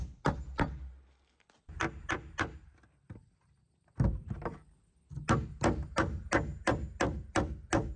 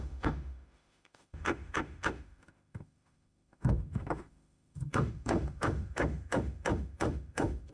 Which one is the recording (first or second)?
first